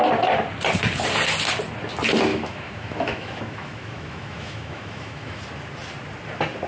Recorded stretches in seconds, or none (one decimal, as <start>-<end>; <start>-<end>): 0.0-2.3; 5.4-6.7